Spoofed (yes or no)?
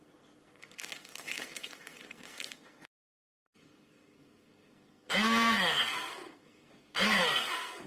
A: yes